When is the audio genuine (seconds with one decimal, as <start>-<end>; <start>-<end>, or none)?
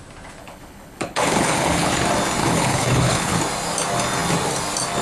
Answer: 0.0-0.4; 1.9-2.4; 3.4-5.0